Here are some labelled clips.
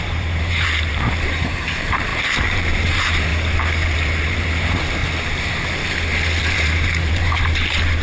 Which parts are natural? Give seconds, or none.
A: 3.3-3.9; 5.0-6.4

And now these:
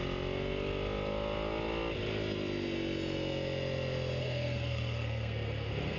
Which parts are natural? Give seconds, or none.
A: 0.0-4.2

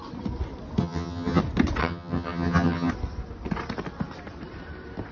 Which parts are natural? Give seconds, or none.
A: 0.0-0.8; 1.4-1.8; 2.9-5.1

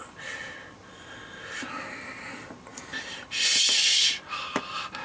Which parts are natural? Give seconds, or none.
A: 0.0-2.7; 3.2-5.0